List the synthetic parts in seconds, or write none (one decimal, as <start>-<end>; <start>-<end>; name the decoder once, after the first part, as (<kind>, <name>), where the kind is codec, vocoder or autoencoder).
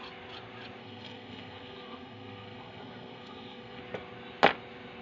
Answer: 0.8-3.8 (codec, SNAC)